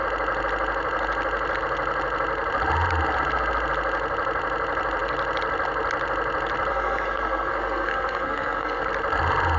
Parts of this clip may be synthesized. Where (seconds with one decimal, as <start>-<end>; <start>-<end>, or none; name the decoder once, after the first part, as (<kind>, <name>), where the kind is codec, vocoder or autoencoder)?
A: 6.7-8.8 (codec, SNAC)